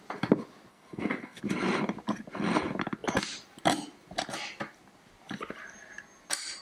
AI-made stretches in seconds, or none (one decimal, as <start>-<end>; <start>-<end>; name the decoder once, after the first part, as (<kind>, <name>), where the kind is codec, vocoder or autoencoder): 0.7-1.4 (codec, SNAC)